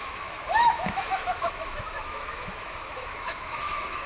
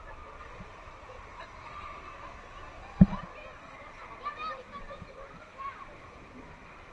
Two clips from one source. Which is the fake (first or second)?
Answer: first